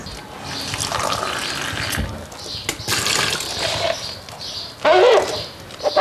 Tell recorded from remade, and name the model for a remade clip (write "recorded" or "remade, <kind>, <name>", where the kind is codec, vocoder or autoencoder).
recorded